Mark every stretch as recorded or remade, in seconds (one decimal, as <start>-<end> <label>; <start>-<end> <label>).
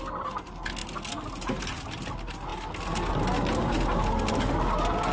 0.0-5.1 recorded